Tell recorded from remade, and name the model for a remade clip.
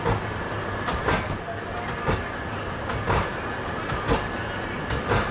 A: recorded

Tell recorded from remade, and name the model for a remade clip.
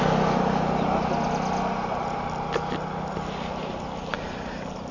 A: recorded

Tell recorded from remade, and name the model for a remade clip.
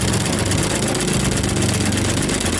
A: recorded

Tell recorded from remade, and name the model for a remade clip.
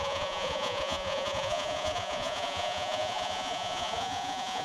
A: remade, vocoder, Vocos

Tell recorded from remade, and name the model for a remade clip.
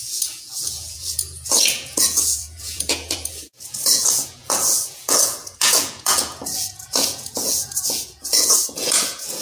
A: remade, vocoder, Vocos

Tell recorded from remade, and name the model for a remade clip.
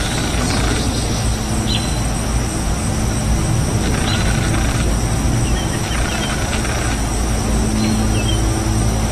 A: recorded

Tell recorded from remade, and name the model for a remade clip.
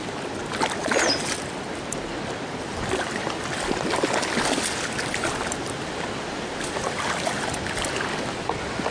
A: recorded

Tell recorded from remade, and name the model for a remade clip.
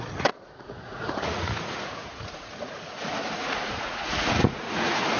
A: remade, vocoder, Vocos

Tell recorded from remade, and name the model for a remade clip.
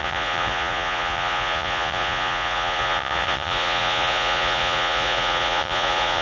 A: remade, vocoder, Vocos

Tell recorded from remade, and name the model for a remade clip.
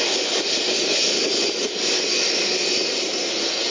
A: recorded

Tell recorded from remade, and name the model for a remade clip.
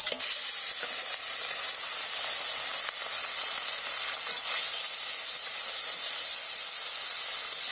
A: recorded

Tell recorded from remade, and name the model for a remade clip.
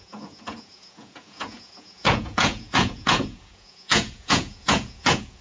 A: remade, vocoder, Vocos